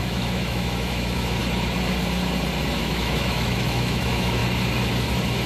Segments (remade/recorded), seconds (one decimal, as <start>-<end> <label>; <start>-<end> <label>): 0.0-1.4 remade; 1.4-2.8 recorded; 2.8-4.4 remade; 4.4-5.5 recorded